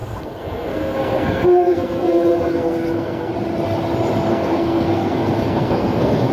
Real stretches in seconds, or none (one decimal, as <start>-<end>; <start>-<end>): 3.3-4.3